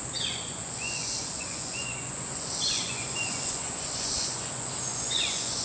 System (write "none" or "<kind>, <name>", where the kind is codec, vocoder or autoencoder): vocoder, Vocos